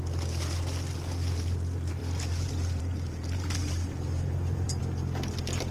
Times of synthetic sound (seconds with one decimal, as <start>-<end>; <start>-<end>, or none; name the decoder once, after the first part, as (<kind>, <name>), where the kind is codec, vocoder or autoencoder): 3.6-4.8 (vocoder, BigVGAN v2)